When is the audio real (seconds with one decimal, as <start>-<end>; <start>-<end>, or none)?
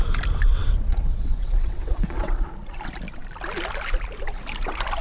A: 0.0-0.5; 2.5-5.0